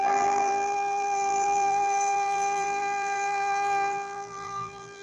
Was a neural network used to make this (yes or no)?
yes